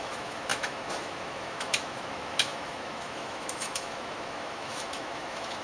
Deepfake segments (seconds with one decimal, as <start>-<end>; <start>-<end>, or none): 0.0-5.6